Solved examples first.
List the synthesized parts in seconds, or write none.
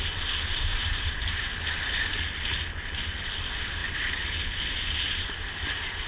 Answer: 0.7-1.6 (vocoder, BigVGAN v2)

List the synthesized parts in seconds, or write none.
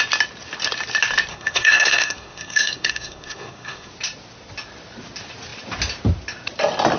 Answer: 1.3-3.9 (codec, SNAC)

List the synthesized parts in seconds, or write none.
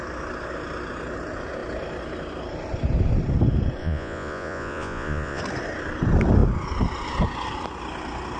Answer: 3.8-5.4 (vocoder, Vocos)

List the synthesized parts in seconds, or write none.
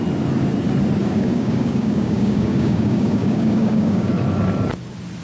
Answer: 1.0-4.1 (codec, DAC)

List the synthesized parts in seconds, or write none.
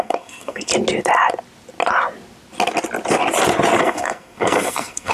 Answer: 0.0-0.7 (codec, SNAC); 3.8-5.1